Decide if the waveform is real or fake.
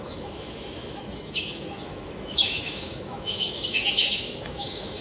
fake